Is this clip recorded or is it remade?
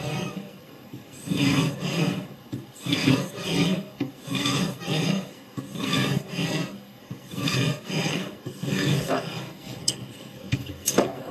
remade